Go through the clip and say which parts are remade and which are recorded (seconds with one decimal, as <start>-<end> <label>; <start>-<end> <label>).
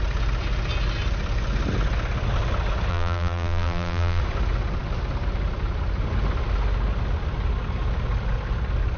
0.0-2.9 recorded; 2.9-4.2 remade; 4.2-9.0 recorded